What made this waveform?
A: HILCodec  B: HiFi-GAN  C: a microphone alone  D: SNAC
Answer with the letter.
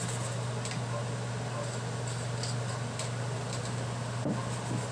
C